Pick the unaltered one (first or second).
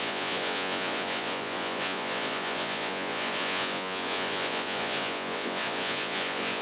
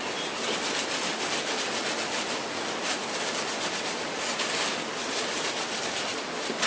second